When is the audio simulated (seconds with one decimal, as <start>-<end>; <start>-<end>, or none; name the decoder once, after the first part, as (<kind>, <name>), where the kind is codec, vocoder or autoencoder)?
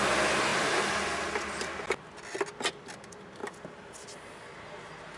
none